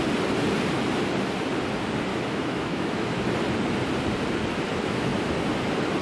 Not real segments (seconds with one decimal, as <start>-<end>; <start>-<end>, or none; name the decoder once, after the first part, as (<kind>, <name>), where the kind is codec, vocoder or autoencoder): 2.1-3.3 (autoencoder, DAC-VAE)